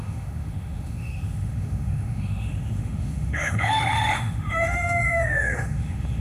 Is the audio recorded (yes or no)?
no